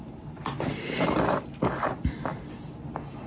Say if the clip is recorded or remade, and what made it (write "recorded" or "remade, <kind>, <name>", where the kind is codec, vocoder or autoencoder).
recorded